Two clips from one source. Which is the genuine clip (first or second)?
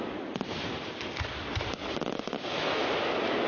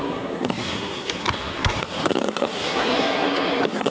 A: first